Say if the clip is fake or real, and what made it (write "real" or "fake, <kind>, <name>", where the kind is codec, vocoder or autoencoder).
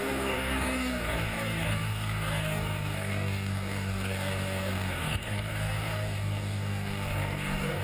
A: fake, codec, DAC